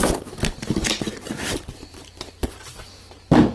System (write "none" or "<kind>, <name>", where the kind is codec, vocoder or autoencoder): vocoder, BigVGAN v2